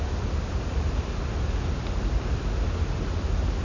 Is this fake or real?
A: real